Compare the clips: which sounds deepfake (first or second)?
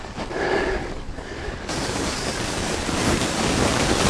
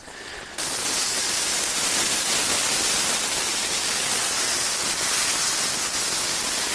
first